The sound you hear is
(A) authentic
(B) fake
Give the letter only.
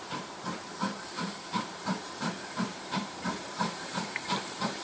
B